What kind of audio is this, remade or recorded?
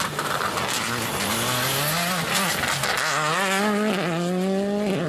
recorded